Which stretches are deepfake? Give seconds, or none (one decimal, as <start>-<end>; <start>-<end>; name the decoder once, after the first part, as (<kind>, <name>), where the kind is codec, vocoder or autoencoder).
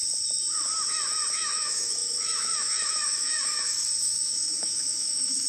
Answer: 1.3-5.5 (autoencoder, DAC-VAE)